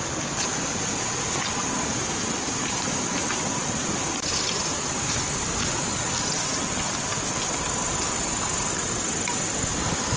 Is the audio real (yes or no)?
yes